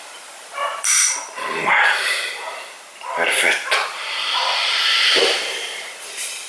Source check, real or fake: fake